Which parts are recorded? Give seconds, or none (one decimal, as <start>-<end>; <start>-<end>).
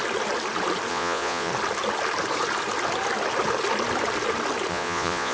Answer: 0.0-0.9; 1.5-4.7